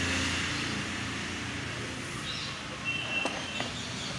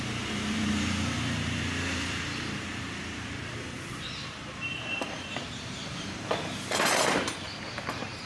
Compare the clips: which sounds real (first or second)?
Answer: first